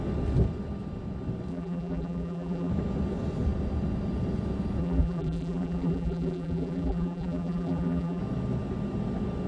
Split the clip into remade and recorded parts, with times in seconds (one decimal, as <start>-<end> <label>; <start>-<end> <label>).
0.0-1.5 recorded; 1.5-2.7 remade; 2.7-4.8 recorded; 4.8-8.2 remade; 8.2-9.5 recorded